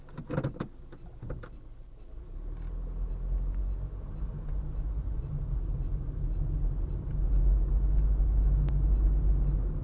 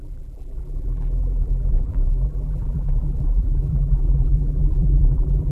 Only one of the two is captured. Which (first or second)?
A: first